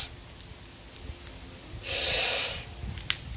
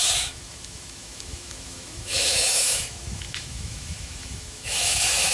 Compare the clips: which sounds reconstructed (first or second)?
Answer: second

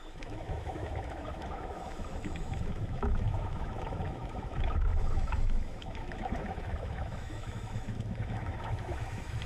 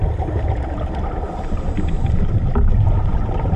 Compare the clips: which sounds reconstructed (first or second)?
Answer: first